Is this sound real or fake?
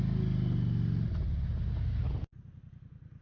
real